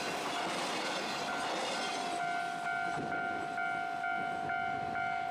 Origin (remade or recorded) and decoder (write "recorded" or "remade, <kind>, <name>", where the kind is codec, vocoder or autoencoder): recorded